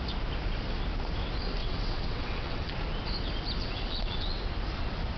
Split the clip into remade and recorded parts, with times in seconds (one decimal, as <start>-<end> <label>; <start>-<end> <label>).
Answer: 0.0-1.6 recorded; 1.6-2.7 remade; 2.7-3.6 recorded; 3.6-4.4 remade; 4.4-5.2 recorded